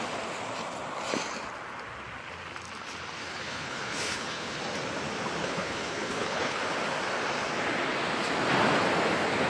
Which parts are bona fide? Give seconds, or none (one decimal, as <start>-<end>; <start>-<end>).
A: 0.0-3.2; 4.6-5.4; 6.6-9.5